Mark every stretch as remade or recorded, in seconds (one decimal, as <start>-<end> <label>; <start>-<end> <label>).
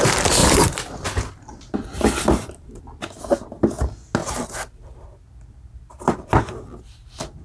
0.0-0.4 recorded; 0.4-2.8 remade; 2.8-4.2 recorded; 4.2-6.4 remade; 6.4-7.4 recorded